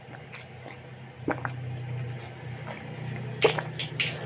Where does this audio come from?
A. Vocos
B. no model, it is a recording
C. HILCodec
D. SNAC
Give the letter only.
B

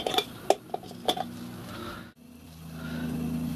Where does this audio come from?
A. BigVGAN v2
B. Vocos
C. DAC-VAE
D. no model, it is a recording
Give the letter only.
D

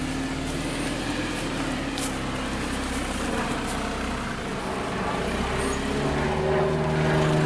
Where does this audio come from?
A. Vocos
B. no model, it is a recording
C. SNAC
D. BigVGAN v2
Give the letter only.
B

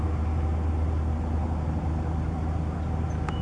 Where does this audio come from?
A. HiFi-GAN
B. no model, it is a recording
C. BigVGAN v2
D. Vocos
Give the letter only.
B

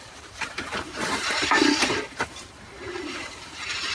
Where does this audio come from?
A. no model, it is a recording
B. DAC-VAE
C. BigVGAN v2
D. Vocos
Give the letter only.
C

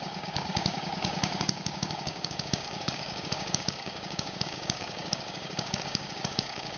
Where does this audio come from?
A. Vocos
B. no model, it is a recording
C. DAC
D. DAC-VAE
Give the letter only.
C